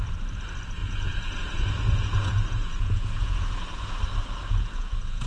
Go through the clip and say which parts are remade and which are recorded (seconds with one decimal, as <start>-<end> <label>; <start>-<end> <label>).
0.0-0.8 recorded; 0.8-4.0 remade; 4.0-4.4 recorded; 4.4-5.3 remade